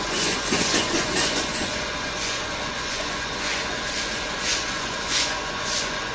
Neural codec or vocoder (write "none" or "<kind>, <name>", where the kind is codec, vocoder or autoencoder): vocoder, Vocos